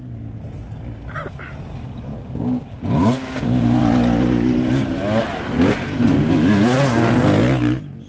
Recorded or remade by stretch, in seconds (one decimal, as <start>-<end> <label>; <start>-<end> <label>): 0.0-2.1 recorded; 2.1-3.8 remade; 3.8-8.1 recorded